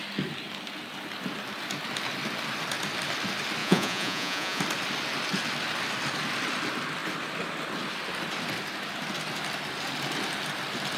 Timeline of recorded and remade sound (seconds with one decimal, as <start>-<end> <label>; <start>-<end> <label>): 0.0-3.6 recorded; 3.6-4.6 remade; 4.6-11.0 recorded